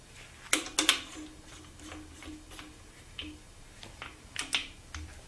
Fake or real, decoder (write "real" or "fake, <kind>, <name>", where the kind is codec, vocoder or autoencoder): real